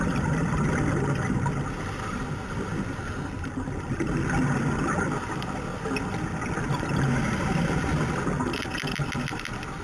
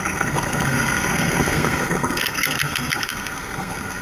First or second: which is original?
first